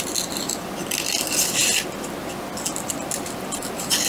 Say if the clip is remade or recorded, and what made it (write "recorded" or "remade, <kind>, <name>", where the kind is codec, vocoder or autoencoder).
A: recorded